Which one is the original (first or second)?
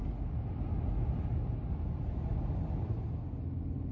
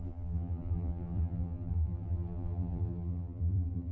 first